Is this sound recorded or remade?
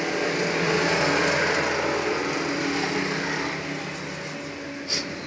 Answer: recorded